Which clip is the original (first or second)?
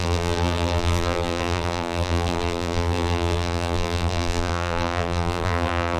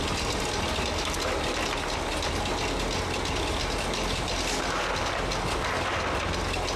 second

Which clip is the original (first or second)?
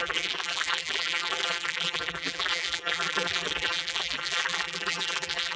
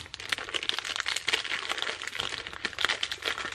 second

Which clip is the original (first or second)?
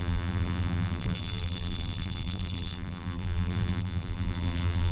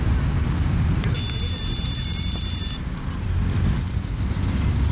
second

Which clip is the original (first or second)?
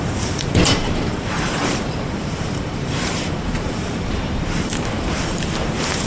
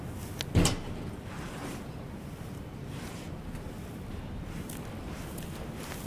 second